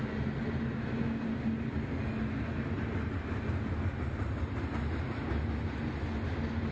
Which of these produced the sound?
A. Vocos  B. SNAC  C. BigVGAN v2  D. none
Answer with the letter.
D